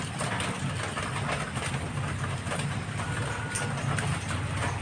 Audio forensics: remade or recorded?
recorded